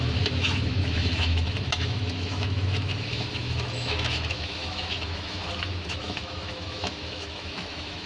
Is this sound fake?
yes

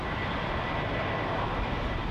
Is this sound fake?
no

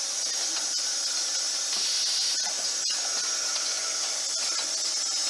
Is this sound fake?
no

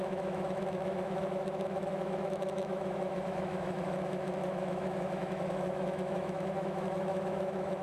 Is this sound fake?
yes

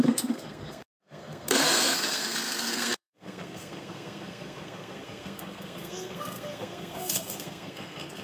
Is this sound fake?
yes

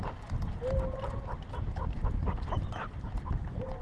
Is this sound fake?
no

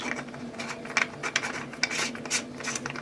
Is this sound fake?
no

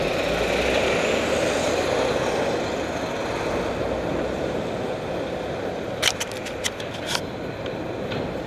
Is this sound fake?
no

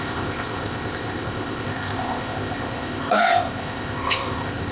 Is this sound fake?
yes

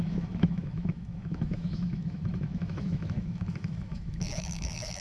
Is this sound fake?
yes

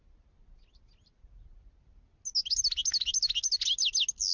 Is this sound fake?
no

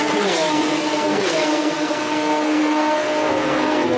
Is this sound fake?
yes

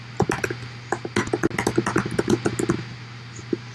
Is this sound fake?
no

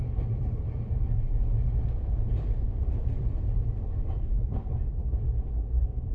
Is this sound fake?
yes